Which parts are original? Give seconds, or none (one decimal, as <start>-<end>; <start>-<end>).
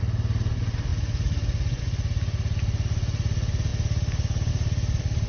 0.0-5.3